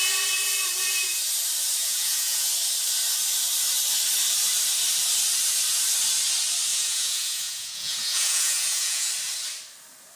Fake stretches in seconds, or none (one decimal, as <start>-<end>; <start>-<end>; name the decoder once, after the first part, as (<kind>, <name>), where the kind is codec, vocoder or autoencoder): 1.8-2.5 (vocoder, Vocos); 6.7-9.1

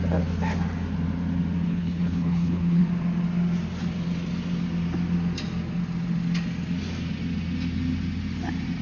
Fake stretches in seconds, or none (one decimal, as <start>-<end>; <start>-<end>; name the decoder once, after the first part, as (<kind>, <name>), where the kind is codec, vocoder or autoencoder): 1.7-2.8 (codec, HILCodec)

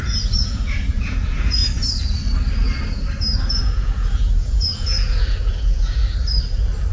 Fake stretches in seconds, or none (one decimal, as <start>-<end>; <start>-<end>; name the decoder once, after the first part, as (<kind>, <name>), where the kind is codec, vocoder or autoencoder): 0.0-1.6 (vocoder, Vocos); 3.6-6.0